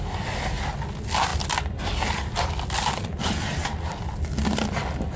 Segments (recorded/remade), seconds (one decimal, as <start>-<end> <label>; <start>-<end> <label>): 0.0-5.2 recorded